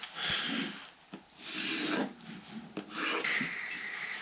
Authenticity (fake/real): real